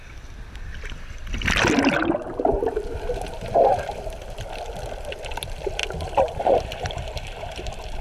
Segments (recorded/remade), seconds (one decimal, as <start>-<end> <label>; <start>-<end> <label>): 0.0-5.8 remade; 5.8-6.4 recorded; 6.4-8.0 remade